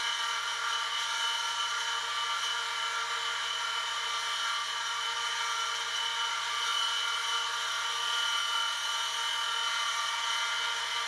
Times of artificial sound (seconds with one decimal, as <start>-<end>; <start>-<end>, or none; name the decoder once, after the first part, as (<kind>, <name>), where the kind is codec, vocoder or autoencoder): none